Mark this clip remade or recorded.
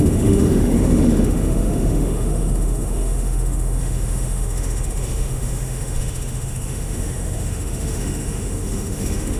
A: remade